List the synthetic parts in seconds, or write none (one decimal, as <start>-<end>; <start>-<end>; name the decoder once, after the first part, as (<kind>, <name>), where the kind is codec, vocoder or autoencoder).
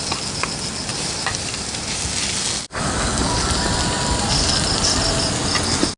0.9-2.0 (vocoder, BigVGAN v2)